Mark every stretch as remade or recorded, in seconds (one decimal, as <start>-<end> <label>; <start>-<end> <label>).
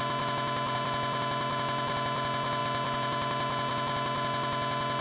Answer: 0.0-5.0 recorded